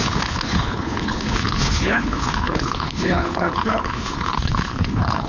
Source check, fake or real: fake